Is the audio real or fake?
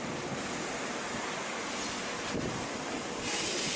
real